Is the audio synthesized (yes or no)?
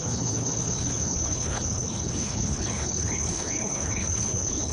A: yes